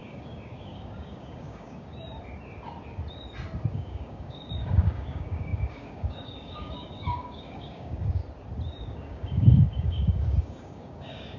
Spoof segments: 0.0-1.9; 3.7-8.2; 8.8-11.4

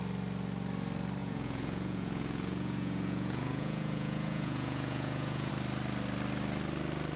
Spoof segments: 1.2-5.5

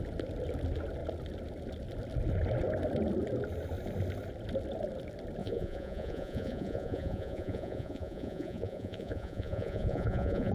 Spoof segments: 5.4-10.5

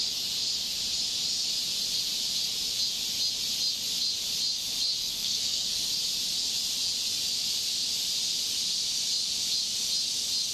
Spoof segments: 5.0-5.9

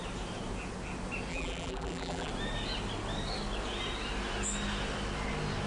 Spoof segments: 1.3-2.3